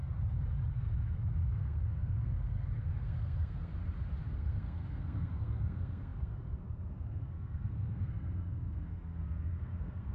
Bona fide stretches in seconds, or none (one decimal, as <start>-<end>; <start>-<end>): 0.0-0.7; 3.7-4.3